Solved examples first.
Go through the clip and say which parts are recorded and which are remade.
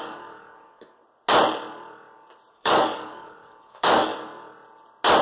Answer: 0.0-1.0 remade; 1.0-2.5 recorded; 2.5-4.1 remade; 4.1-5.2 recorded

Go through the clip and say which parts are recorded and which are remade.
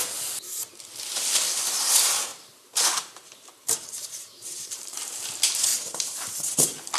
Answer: 0.0-2.3 recorded; 2.3-5.3 remade; 5.3-5.7 recorded; 5.7-6.3 remade; 6.3-7.0 recorded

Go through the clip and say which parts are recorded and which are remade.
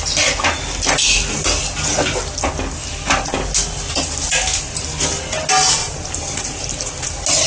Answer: 0.0-5.8 recorded; 5.8-6.9 remade; 6.9-7.5 recorded